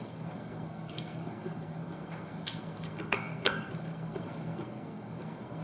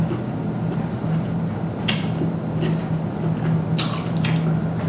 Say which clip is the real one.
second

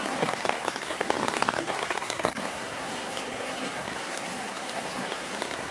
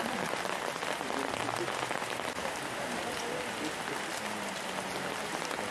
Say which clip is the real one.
second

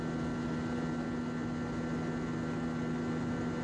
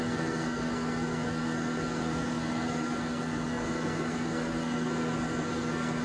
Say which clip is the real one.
first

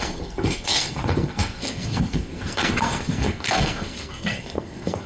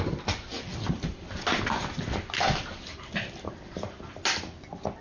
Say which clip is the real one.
second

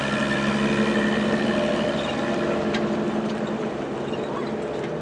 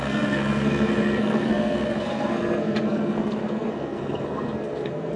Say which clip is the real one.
first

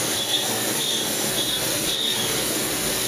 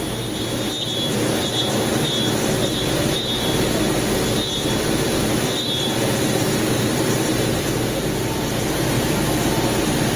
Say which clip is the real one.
second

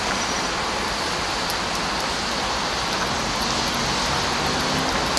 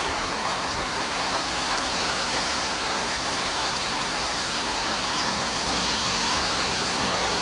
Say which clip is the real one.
first